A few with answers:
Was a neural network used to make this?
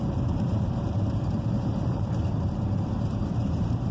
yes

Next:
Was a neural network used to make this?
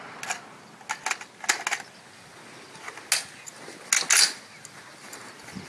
no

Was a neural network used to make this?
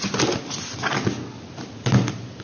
no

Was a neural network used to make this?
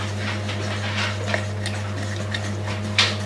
no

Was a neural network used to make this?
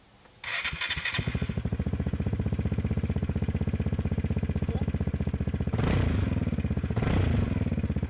no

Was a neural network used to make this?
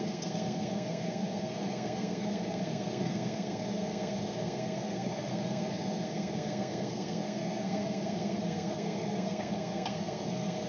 yes